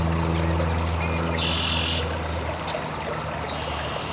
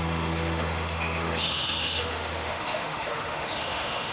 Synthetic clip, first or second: second